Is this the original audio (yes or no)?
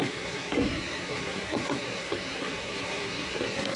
no